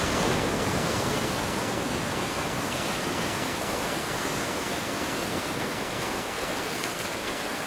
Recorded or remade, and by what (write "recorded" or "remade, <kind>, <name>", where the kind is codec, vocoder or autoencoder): remade, codec, SNAC